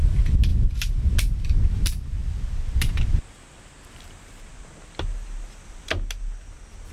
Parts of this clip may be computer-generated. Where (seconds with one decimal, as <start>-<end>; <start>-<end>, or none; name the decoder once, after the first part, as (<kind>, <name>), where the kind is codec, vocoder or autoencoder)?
0.5-4.5 (vocoder, BigVGAN v2)